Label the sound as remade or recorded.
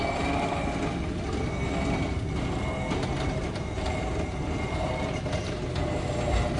recorded